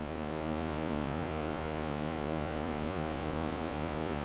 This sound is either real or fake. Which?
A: fake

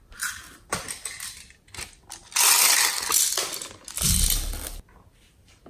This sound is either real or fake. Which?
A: real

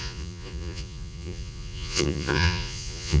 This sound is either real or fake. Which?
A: fake